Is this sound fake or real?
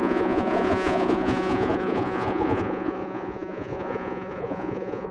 fake